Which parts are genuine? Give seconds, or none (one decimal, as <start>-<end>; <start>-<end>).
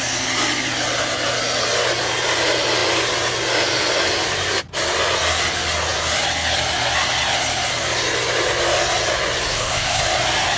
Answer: 0.0-9.5; 10.0-10.6